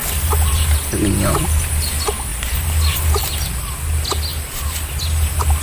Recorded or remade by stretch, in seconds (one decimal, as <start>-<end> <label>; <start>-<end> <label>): 0.0-5.6 recorded